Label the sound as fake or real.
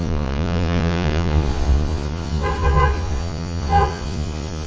fake